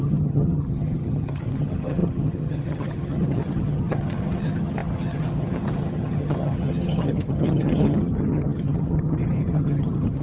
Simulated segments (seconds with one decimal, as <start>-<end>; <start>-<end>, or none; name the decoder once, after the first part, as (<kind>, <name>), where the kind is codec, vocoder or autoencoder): 0.0-10.2 (vocoder, HiFi-GAN)